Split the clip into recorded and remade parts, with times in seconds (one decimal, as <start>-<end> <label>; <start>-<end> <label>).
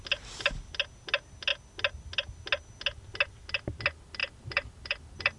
0.0-4.2 recorded; 4.2-5.4 remade